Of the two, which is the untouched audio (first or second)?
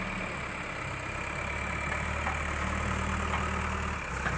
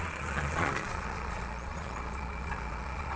first